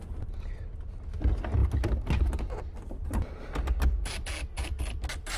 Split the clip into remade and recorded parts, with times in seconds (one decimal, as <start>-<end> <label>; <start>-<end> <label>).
0.0-5.4 recorded